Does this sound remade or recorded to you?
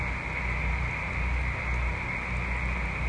recorded